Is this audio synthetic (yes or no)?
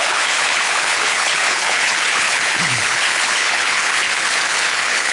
yes